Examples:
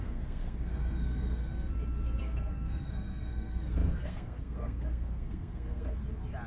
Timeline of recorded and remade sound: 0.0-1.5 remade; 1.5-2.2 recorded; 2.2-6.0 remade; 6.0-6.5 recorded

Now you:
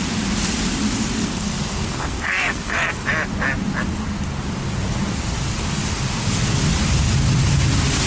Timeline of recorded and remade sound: 0.0-1.2 recorded; 1.2-2.9 remade; 2.9-8.1 recorded